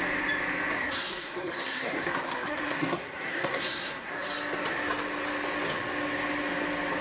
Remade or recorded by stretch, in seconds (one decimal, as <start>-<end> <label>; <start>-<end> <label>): 0.0-0.8 recorded; 0.8-4.1 remade; 4.1-7.0 recorded